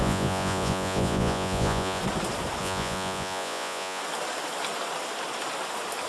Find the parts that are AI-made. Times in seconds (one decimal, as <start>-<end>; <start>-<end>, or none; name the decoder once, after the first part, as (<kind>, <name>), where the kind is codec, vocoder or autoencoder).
0.0-2.0 (vocoder, Vocos); 2.6-4.0